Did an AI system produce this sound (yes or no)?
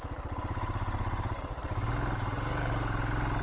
no